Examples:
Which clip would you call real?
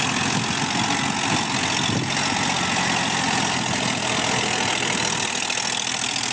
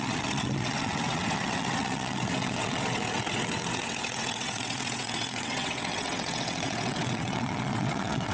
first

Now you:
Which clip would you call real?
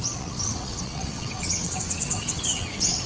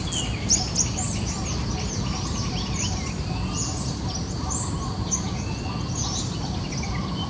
second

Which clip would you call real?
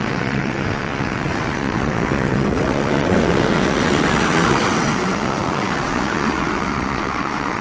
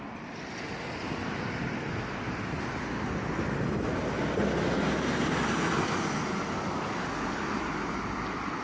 second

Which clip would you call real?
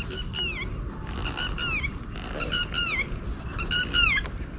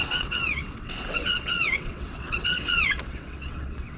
first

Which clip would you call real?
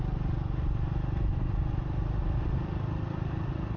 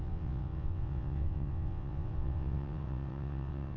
first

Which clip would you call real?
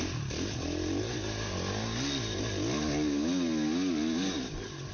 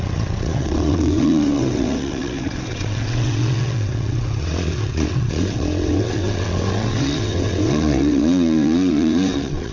first